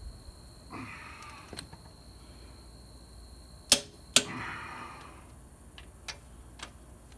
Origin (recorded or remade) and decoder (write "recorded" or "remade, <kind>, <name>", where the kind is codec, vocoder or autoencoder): recorded